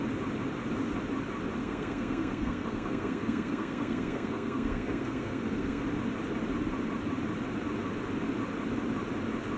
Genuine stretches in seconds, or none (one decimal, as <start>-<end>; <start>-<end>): 0.0-1.6; 5.8-9.6